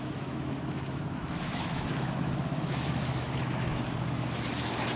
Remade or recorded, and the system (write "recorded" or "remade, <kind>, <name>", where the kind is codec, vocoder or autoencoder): remade, autoencoder, DAC-VAE